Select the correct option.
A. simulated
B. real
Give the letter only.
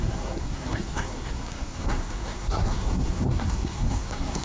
A